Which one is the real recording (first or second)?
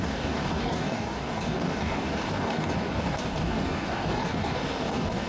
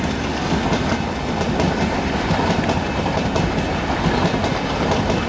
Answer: second